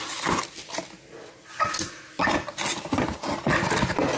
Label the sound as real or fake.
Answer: real